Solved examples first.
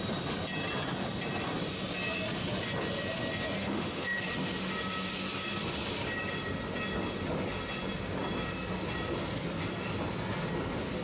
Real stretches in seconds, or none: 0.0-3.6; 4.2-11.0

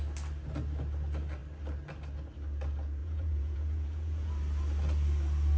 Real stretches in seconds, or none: 0.0-3.0; 4.3-5.6

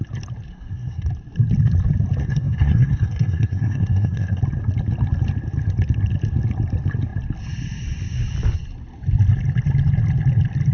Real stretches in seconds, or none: 0.0-0.5; 1.1-2.2; 4.4-10.7